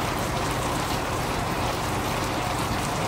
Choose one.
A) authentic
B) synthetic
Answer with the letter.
B